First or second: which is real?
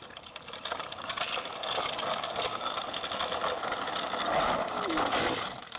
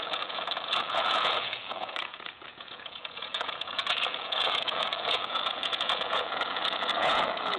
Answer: first